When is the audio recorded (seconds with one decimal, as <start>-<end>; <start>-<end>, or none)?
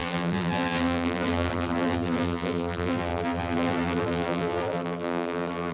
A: none